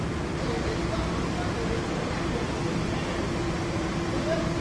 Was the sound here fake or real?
real